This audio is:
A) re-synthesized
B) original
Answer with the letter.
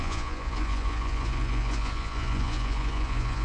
A